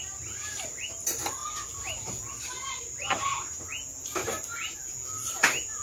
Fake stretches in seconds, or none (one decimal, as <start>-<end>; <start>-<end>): none